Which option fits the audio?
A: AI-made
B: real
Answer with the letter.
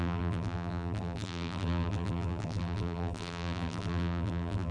A